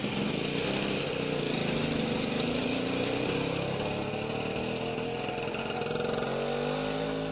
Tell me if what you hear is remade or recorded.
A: recorded